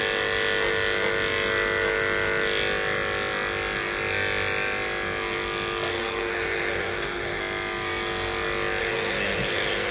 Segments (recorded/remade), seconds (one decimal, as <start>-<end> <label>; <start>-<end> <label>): 0.0-5.9 recorded; 5.9-7.4 remade; 7.4-8.8 recorded; 8.8-9.9 remade